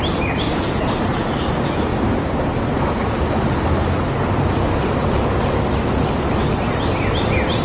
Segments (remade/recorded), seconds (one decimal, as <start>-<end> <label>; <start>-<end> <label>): 0.0-7.6 recorded